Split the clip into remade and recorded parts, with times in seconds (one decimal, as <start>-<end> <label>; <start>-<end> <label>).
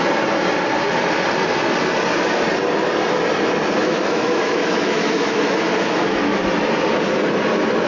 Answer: 0.0-3.8 recorded; 3.8-6.5 remade; 6.5-7.9 recorded